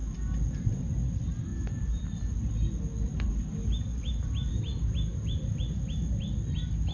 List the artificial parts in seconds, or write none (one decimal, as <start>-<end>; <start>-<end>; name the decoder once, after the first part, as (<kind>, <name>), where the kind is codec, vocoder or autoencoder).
none